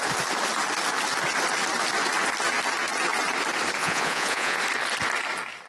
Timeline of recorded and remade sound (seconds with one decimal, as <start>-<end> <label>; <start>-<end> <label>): 0.0-3.8 recorded; 3.8-4.6 remade; 4.6-5.7 recorded